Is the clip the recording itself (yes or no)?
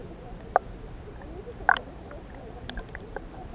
yes